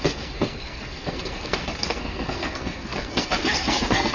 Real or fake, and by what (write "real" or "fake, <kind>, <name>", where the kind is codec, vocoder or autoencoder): fake, codec, SNAC